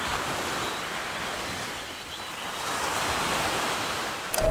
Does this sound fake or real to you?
real